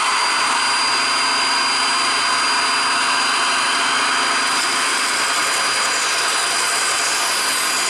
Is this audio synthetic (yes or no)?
no